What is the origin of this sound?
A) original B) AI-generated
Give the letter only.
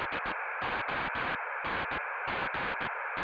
B